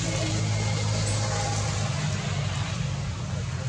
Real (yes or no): yes